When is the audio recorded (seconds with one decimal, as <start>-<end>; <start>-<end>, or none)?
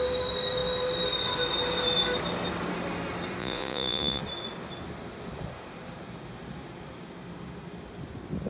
0.0-3.4; 4.2-8.5